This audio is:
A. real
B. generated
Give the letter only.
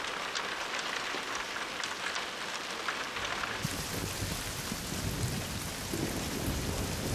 A